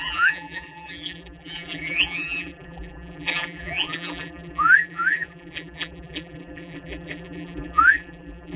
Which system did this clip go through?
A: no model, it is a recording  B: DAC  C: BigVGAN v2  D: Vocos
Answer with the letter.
C